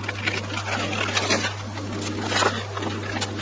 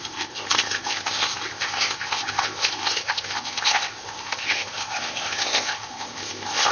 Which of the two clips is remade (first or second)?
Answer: second